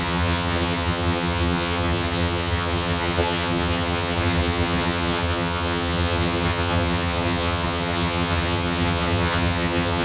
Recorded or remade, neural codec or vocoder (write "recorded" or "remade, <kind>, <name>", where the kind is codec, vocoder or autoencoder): remade, vocoder, HiFi-GAN